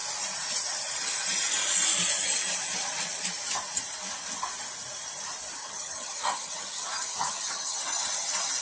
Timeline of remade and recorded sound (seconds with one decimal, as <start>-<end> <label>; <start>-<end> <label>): 0.0-5.6 recorded; 5.6-8.0 remade; 8.0-8.6 recorded